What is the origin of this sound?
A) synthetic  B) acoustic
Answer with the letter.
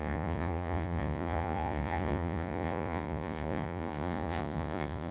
A